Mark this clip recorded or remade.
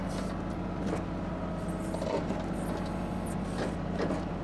recorded